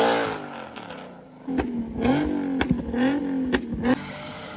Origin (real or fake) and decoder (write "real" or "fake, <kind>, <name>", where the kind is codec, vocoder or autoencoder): real